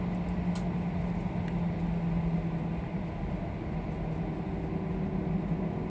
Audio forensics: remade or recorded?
recorded